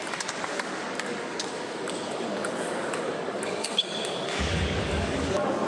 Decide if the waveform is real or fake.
fake